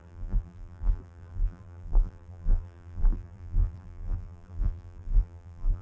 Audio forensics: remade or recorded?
remade